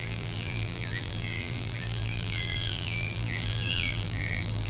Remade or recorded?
remade